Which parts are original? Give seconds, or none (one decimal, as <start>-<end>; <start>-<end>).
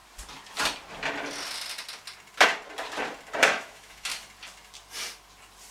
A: 0.0-3.4; 4.1-5.7